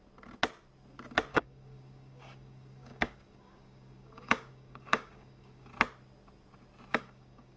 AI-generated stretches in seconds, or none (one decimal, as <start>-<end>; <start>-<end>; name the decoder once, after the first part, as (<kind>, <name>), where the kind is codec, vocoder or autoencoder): 1.3-5.7 (codec, DAC); 6.9-7.6